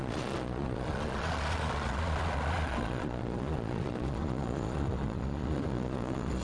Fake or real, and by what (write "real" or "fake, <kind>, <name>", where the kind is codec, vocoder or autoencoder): fake, vocoder, Vocos